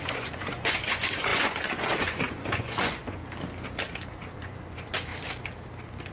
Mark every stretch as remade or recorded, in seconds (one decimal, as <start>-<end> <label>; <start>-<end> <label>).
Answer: 0.0-3.2 remade; 3.2-4.3 recorded; 4.3-5.1 remade; 5.1-6.1 recorded